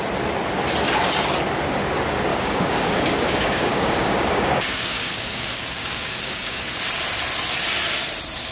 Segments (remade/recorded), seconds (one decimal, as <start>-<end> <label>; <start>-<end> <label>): 0.0-2.3 recorded; 2.3-6.8 remade; 6.8-8.5 recorded